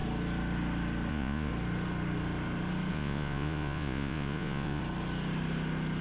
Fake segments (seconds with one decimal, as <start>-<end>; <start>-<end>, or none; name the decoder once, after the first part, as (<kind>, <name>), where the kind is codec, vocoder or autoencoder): 1.1-1.5 (vocoder, Vocos); 2.9-4.8